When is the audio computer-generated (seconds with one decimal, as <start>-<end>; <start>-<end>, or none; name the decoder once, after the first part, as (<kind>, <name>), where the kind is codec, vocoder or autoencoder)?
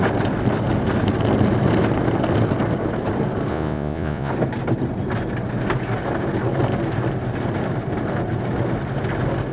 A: 3.5-4.3 (vocoder, Vocos)